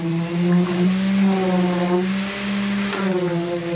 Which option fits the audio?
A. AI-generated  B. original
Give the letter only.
B